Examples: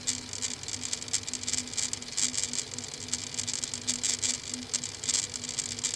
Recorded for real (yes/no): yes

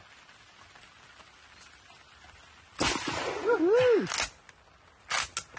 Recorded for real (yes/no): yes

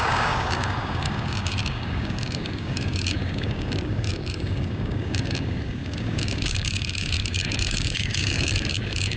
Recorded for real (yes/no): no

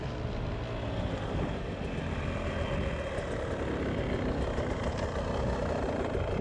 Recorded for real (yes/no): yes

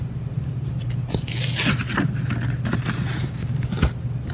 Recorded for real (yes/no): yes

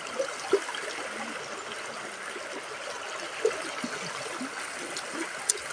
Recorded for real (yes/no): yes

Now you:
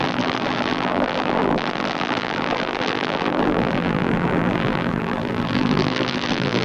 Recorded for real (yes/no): no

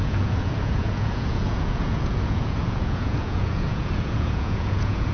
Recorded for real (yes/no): no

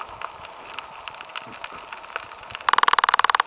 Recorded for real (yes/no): yes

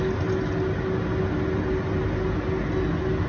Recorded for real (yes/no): yes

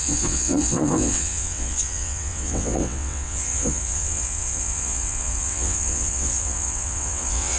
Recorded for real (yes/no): no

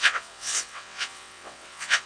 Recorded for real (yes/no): no